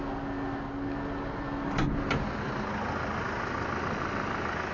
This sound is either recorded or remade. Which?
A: recorded